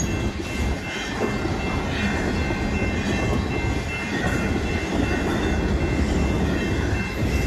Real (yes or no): yes